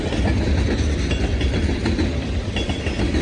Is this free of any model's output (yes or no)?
yes